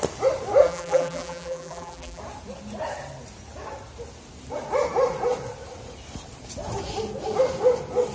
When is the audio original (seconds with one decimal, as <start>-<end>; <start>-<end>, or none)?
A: 0.0-0.6; 2.2-8.1